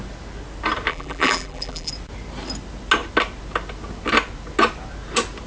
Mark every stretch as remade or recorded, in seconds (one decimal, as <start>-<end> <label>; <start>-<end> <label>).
0.0-0.9 recorded; 0.9-1.9 remade; 1.9-5.5 recorded